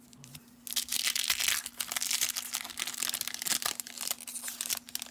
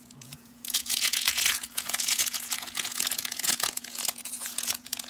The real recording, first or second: first